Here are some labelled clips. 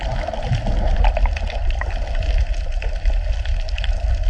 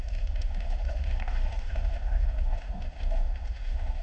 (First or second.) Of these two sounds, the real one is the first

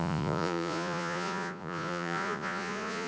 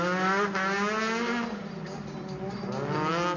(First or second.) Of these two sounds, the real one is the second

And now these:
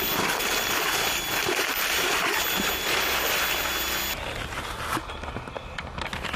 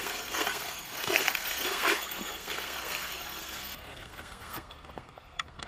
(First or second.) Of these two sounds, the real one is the first